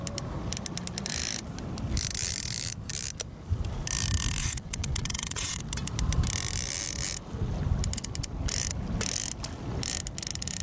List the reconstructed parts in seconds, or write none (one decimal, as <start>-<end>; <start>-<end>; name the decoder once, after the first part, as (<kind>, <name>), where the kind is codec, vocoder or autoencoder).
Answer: 4.4-5.6 (vocoder, WaveNeXt)